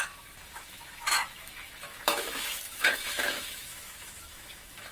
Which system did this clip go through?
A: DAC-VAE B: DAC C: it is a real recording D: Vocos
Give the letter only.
A